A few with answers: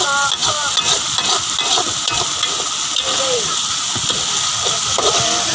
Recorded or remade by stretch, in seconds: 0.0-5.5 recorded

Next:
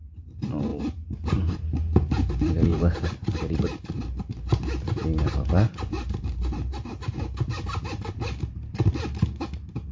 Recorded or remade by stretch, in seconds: 0.0-2.7 recorded; 2.7-6.9 remade; 6.9-9.9 recorded